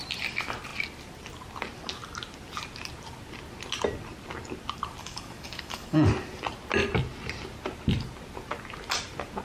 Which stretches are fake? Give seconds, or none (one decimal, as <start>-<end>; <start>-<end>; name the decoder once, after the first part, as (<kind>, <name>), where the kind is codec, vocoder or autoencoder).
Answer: 5.0-6.1 (codec, DAC)